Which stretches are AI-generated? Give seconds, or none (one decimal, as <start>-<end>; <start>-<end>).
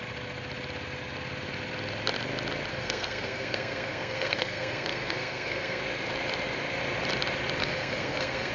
2.7-5.8; 7.6-8.5